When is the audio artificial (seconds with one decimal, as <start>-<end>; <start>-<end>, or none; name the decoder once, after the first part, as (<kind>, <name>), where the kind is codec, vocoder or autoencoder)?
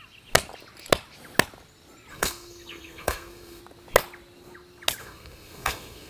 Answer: 2.1-3.6 (codec, SNAC); 5.0-6.1